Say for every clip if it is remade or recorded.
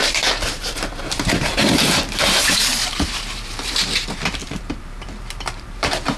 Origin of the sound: remade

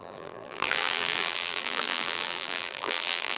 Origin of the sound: remade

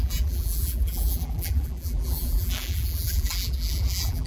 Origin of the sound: remade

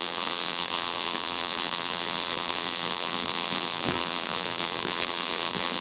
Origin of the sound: remade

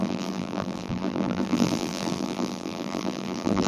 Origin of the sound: remade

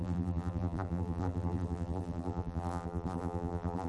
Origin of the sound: remade